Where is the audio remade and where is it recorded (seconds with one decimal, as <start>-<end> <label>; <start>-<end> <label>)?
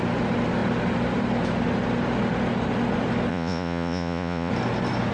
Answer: 0.0-3.3 recorded; 3.3-4.5 remade; 4.5-5.1 recorded